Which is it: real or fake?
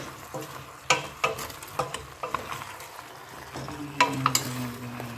real